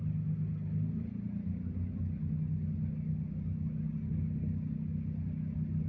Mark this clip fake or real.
real